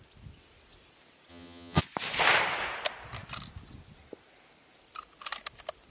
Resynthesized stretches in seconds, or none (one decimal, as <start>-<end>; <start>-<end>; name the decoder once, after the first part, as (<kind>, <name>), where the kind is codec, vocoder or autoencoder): 1.3-1.8 (vocoder, HiFi-GAN)

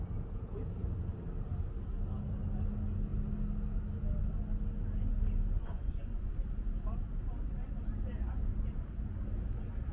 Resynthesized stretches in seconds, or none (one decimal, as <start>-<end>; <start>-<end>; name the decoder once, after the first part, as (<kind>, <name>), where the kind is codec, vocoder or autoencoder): 5.6-6.3 (vocoder, Vocos)

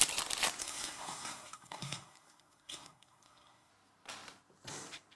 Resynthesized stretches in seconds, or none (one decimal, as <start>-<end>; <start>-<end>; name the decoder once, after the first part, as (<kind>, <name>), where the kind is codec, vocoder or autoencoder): 0.6-3.7 (codec, SNAC)

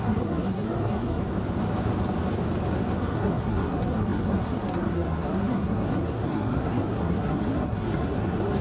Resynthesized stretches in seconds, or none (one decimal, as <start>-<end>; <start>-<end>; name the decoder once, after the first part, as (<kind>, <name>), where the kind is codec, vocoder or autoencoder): 0.0-1.2 (codec, SNAC); 3.0-8.6

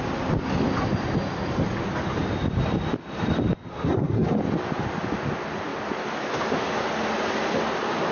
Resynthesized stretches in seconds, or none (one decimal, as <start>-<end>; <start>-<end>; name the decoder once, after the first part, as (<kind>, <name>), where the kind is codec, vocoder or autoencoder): 3.7-4.4 (codec, SNAC)

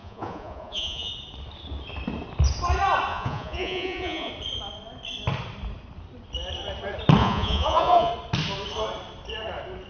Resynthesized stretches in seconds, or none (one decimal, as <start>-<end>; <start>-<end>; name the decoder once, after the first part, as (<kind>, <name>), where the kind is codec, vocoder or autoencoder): 0.0-1.1 (vocoder, Vocos); 3.1-4.3; 7.2-8.1

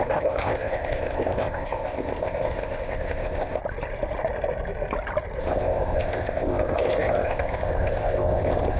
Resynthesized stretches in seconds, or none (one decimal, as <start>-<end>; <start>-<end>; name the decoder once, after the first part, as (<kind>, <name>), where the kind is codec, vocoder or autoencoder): 0.0-3.6 (codec, ZipCodec); 5.4-8.8

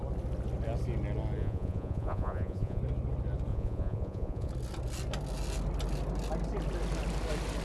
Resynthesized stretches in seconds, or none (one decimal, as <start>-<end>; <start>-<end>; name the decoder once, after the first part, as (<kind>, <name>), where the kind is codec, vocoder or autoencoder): 1.4-2.8 (vocoder, Vocos); 3.5-4.5